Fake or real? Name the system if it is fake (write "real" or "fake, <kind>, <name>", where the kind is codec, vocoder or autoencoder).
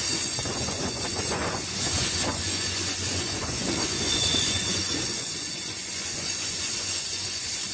fake, vocoder, Vocos